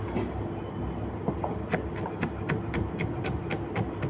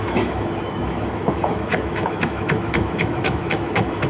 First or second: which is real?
first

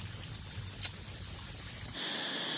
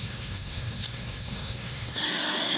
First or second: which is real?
first